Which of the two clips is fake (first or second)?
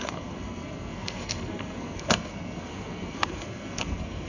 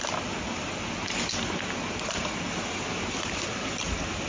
first